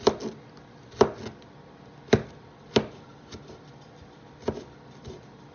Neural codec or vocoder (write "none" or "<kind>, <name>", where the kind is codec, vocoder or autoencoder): none